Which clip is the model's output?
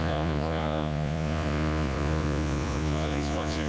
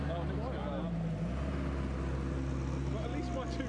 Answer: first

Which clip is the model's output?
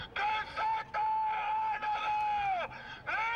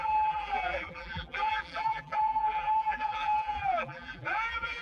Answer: second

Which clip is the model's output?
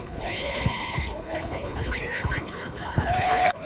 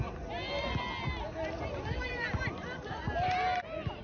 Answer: first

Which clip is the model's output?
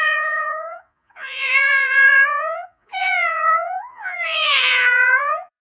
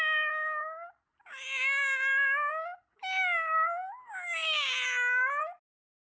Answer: first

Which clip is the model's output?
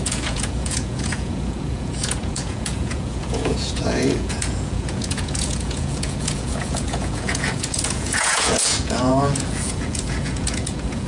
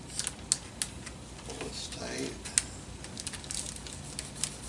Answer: first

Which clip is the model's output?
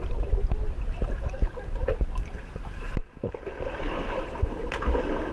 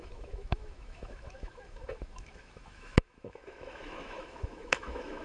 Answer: second